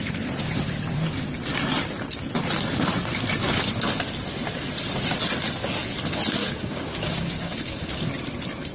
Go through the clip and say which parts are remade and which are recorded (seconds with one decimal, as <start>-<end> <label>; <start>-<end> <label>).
0.0-6.4 recorded; 6.4-8.0 remade; 8.0-8.7 recorded